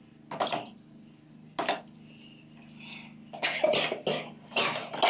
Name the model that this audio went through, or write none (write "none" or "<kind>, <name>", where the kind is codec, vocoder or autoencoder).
none